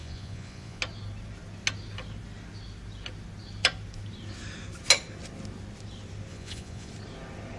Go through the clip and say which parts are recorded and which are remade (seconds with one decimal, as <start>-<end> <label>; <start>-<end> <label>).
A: 0.0-0.8 remade; 0.8-6.3 recorded; 6.3-6.9 remade; 6.9-7.6 recorded